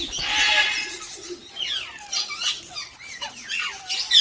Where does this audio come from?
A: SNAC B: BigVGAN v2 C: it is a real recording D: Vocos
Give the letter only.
C